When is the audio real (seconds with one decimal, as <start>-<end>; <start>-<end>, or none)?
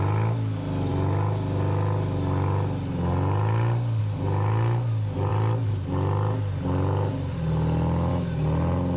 0.0-9.0